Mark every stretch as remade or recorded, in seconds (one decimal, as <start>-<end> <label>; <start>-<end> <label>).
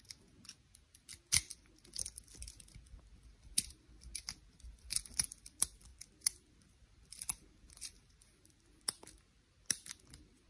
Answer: 0.0-5.9 recorded; 5.9-8.8 remade; 8.8-10.5 recorded